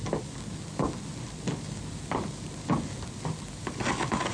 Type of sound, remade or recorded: recorded